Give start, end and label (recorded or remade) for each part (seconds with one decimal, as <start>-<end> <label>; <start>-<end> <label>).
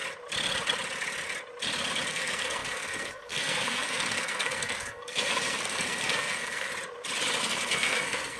0.0-2.1 recorded; 2.1-6.7 remade; 6.7-7.4 recorded; 7.4-8.4 remade